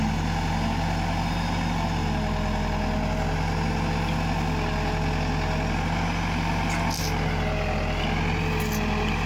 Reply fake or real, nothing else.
real